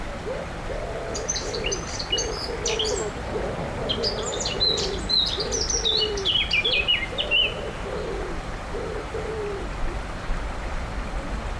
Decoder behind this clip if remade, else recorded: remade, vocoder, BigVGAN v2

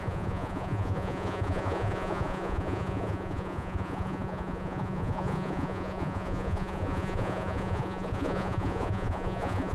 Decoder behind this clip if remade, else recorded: remade, vocoder, Vocos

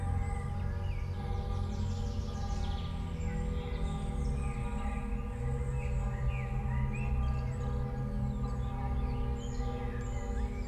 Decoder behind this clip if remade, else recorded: recorded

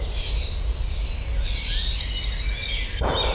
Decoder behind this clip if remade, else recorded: recorded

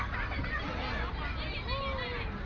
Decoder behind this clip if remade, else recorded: recorded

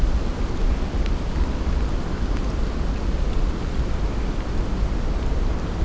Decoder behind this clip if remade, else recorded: recorded